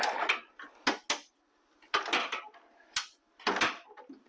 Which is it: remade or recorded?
recorded